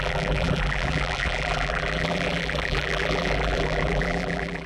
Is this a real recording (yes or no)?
no